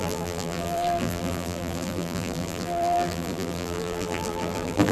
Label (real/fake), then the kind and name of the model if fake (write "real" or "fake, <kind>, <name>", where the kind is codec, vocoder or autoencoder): fake, vocoder, BigVGAN v2